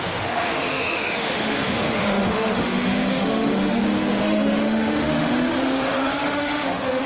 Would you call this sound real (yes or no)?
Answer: no